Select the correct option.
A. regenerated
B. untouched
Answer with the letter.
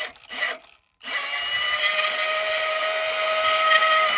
B